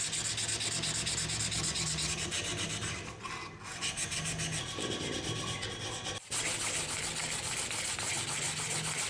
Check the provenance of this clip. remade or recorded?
recorded